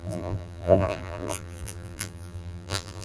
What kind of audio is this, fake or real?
fake